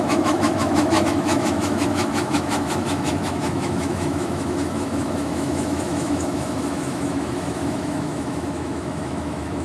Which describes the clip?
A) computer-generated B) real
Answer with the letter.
A